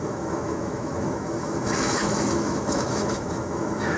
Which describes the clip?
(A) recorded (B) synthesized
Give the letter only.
B